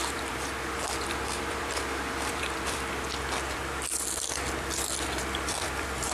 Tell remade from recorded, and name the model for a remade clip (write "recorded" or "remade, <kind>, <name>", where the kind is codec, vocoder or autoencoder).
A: remade, vocoder, BigVGAN v2